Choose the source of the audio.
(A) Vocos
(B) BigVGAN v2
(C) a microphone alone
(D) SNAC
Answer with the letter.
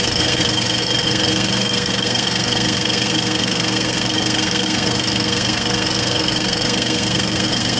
D